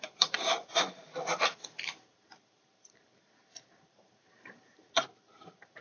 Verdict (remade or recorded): remade